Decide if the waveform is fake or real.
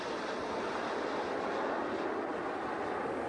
real